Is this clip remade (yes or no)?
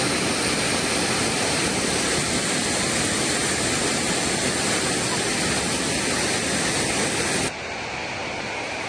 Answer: no